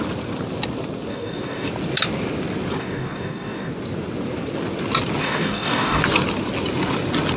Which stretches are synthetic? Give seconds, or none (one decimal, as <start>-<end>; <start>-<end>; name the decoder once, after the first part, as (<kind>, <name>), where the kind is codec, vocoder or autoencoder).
1.1-1.7 (codec, DAC); 2.8-3.7; 5.2-6.0